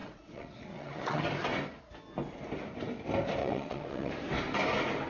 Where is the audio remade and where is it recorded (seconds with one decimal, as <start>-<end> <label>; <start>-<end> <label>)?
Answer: 0.0-1.2 remade; 1.2-3.4 recorded; 3.4-4.1 remade; 4.1-5.1 recorded

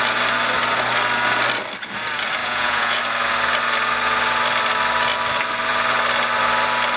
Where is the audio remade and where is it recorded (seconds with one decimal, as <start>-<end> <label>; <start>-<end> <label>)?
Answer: 0.0-2.4 recorded; 2.4-3.0 remade; 3.0-7.0 recorded

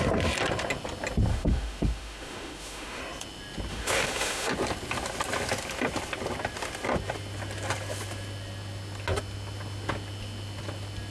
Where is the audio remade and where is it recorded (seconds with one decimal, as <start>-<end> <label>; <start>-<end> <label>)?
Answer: 0.0-1.3 recorded; 1.3-3.0 remade; 3.0-3.7 recorded; 3.7-4.5 remade; 4.5-11.1 recorded

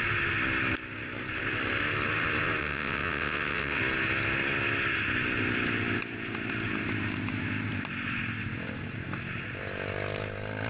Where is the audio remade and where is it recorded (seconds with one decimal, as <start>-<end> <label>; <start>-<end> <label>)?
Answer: 0.0-2.6 recorded; 2.6-3.8 remade; 3.8-10.7 recorded

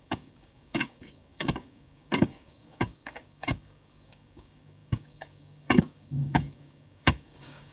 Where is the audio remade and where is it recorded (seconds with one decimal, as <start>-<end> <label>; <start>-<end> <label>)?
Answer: 0.0-7.7 remade